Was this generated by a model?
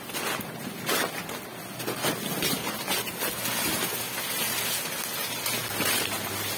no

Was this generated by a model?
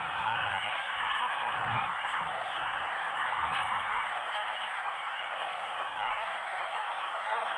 yes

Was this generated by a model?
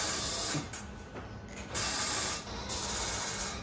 no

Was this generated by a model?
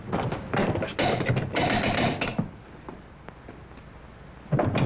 no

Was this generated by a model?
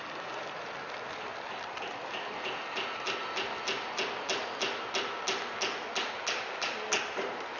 no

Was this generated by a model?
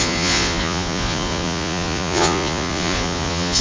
yes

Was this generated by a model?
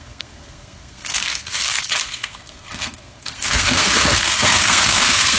yes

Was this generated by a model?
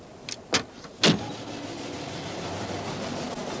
no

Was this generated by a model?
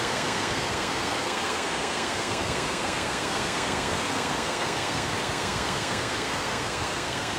yes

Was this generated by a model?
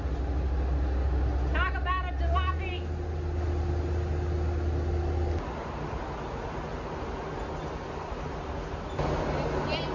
no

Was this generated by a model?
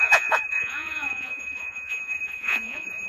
yes